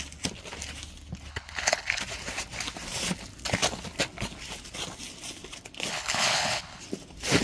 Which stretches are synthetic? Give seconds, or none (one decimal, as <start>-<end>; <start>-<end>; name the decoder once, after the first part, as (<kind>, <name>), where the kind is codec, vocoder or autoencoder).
1.3-2.0 (codec, HILCodec); 5.9-6.8

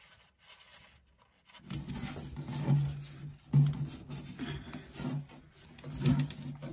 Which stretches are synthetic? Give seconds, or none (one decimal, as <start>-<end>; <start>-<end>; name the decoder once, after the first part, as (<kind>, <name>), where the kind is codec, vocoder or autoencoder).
none

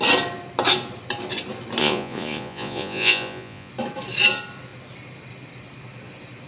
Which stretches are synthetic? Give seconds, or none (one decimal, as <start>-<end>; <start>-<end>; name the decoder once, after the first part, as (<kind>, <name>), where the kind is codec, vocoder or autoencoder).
1.8-3.7 (vocoder, Vocos)

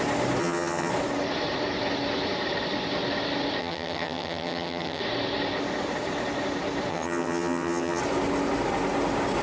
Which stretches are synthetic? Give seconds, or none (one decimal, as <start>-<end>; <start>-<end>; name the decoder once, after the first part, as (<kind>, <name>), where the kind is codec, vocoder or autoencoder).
0.4-0.9 (vocoder, HiFi-GAN); 3.6-5.0; 6.9-8.0